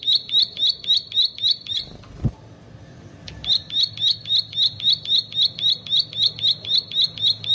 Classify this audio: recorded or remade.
recorded